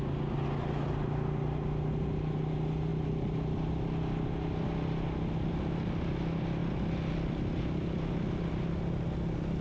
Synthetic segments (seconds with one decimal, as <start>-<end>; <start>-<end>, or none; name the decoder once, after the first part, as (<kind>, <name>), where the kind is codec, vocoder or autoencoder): none